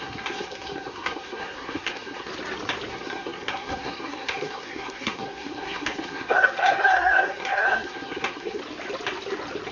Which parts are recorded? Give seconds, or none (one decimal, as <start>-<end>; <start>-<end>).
2.3-2.9; 8.6-9.7